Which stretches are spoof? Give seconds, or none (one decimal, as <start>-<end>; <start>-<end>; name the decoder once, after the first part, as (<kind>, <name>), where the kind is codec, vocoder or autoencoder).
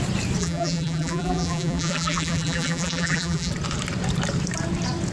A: 0.4-3.5 (vocoder, BigVGAN v2)